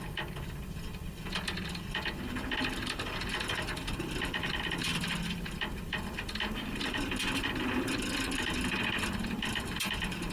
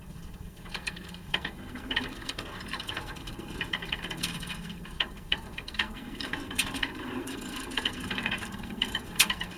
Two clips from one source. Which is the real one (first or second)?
first